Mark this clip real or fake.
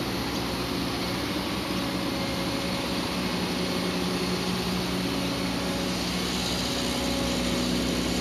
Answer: real